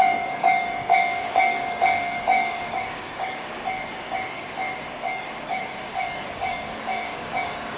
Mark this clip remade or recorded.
remade